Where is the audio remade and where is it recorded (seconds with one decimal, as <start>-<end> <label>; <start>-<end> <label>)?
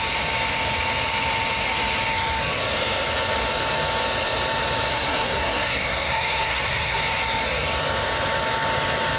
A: 0.0-4.9 recorded; 4.9-7.0 remade; 7.0-9.2 recorded